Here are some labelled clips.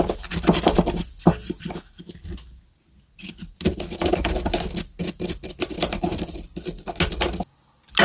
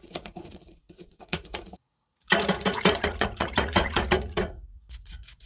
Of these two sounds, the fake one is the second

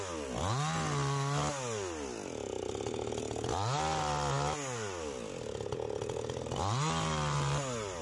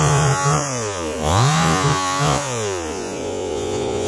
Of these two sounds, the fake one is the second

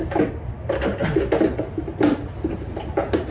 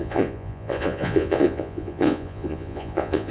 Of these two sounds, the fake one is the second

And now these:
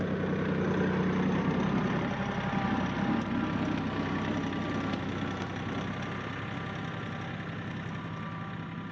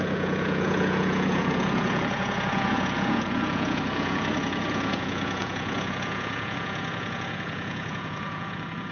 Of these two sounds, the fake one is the second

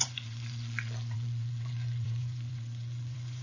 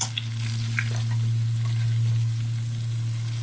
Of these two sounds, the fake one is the first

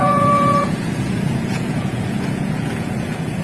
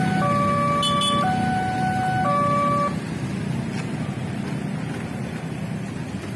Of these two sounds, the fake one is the first